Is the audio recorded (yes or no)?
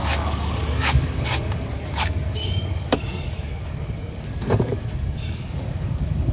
no